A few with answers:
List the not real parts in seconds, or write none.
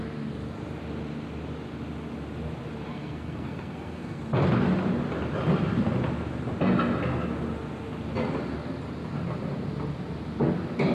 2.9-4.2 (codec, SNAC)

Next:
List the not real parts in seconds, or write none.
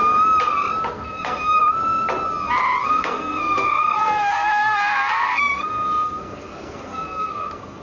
0.9-1.6 (codec, SNAC); 2.8-7.8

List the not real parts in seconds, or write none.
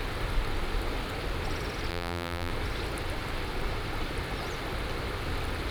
1.9-2.5 (vocoder, BigVGAN v2)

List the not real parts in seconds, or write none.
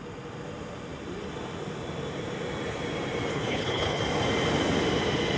3.3-4.0 (codec, HILCodec)